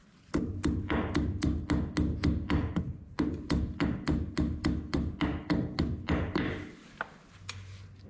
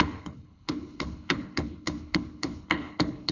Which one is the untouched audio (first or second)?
first